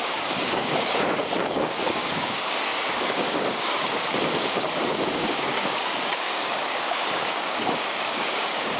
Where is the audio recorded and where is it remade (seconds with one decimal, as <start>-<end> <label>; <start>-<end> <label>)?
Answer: 0.0-8.8 remade